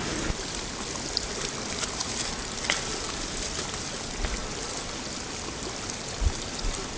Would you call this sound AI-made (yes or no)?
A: no